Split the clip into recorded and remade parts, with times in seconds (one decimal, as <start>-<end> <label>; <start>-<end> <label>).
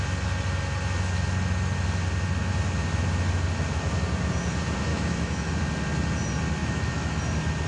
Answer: 0.0-4.9 recorded; 4.9-5.5 remade; 5.5-6.6 recorded; 6.6-7.2 remade; 7.2-7.7 recorded